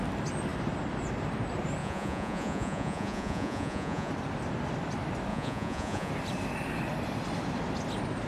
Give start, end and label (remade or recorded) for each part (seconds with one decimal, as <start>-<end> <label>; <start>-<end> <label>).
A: 0.0-1.8 recorded; 1.8-4.1 remade; 4.1-5.3 recorded; 5.3-6.1 remade; 6.1-8.3 recorded